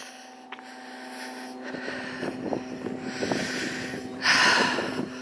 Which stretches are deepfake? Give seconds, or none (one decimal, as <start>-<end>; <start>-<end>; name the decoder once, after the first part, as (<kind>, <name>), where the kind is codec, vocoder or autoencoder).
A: 4.1-4.7 (vocoder, BigVGAN v2)